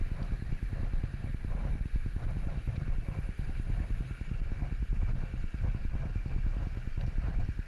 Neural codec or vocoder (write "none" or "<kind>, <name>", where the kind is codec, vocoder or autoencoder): none